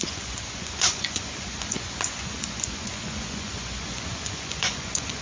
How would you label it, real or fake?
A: fake